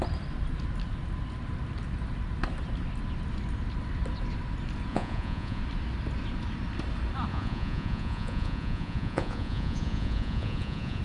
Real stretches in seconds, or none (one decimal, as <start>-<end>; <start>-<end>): 0.0-4.9; 5.6-7.3